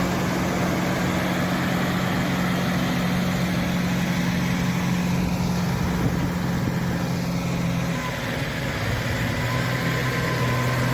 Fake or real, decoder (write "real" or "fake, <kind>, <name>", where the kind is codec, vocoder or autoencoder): real